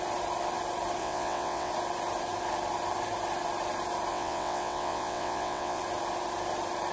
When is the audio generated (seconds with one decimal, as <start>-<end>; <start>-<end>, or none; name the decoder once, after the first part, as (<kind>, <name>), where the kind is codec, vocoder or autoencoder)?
1.0-1.7 (vocoder, WaveNeXt); 4.1-5.8

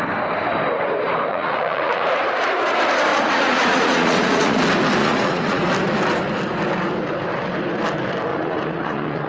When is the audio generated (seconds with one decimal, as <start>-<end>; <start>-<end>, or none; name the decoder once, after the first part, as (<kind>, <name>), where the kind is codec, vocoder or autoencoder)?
1.3-2.1 (vocoder, Vocos); 3.1-4.6; 5.0-5.7; 8.3-9.3

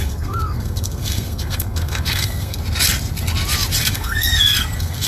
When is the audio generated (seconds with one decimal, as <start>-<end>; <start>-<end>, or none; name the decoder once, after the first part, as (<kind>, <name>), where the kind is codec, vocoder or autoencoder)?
0.0-2.6 (codec, SNAC); 3.8-5.1

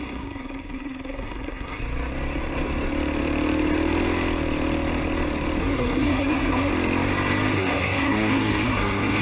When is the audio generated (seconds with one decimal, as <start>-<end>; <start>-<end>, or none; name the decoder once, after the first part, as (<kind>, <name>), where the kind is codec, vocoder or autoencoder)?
0.0-1.8 (codec, SNAC); 5.6-6.7; 7.5-9.2

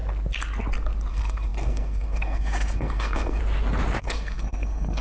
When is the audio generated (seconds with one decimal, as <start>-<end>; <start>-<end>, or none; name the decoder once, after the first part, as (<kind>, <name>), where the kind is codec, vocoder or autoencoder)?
1.1-3.4 (codec, SNAC); 4.0-5.0

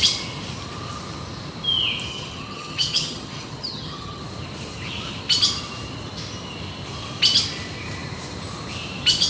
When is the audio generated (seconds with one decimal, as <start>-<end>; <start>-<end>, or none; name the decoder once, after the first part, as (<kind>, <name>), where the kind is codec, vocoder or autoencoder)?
2.1-4.2 (vocoder, HiFi-GAN)

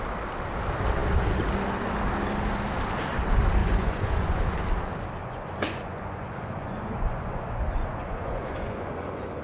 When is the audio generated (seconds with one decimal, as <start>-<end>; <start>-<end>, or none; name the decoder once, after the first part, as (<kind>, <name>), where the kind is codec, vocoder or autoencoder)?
3.6-4.4 (vocoder, Vocos); 5.2-9.4

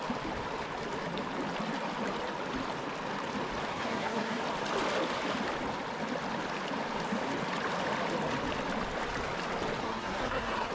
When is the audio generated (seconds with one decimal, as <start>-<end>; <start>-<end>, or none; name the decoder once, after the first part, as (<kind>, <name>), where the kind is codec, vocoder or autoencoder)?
3.7-4.4 (codec, SNAC); 9.8-10.7